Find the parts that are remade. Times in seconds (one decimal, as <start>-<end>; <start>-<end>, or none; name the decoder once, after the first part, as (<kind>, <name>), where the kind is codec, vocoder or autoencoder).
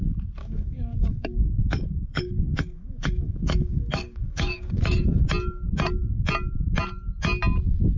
0.4-5.2 (codec, DAC)